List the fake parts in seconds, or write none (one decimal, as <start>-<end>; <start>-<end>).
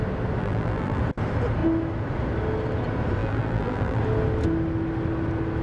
0.4-1.0; 3.2-4.0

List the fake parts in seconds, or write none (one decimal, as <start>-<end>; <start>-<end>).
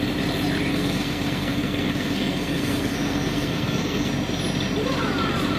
0.7-4.1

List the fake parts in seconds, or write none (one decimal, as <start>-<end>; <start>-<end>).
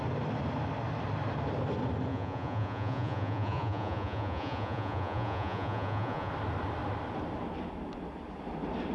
2.1-6.3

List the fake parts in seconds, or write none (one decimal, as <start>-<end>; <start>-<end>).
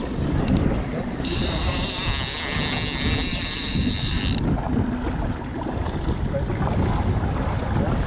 0.9-2.0; 3.3-4.2